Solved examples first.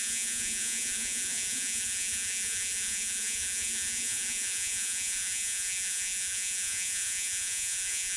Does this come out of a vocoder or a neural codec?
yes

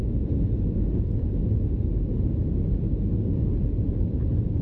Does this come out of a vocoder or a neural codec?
no